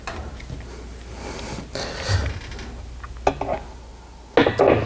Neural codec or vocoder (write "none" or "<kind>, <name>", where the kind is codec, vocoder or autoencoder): none